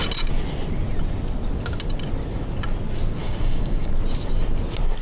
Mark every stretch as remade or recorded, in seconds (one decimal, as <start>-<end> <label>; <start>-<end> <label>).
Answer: 0.0-3.2 recorded; 3.2-3.9 remade; 3.9-5.0 recorded